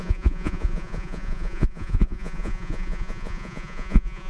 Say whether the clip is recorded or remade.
remade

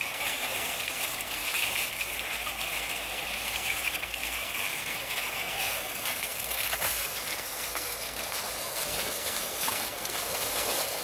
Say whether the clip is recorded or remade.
remade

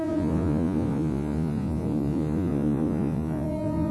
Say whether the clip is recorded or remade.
remade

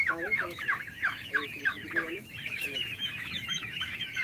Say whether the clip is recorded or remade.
remade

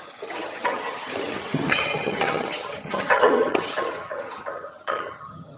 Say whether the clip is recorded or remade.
remade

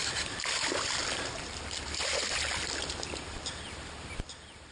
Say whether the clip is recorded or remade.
recorded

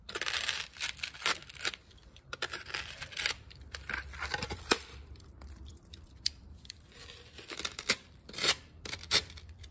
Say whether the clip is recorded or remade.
remade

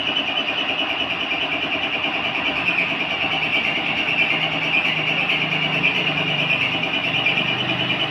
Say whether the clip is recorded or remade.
recorded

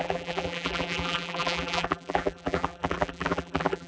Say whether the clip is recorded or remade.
remade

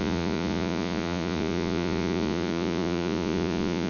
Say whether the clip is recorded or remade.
remade